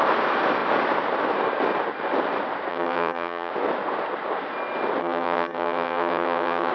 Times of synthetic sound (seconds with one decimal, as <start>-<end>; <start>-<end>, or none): 2.7-3.5; 5.0-6.7